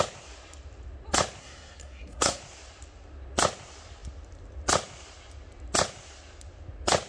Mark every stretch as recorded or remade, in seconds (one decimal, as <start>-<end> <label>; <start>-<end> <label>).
0.0-1.4 recorded; 1.4-2.4 remade; 2.4-7.1 recorded

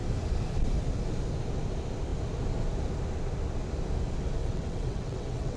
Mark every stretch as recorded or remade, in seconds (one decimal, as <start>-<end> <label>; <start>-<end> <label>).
0.0-4.4 recorded; 4.4-5.6 remade